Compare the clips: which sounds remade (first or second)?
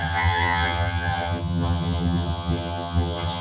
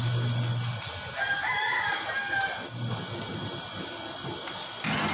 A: first